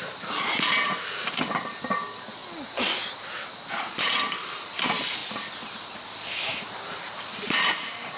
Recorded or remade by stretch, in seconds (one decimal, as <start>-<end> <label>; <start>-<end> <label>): 0.0-2.4 remade; 2.4-3.7 recorded; 3.7-5.2 remade; 5.2-6.6 recorded; 6.6-8.2 remade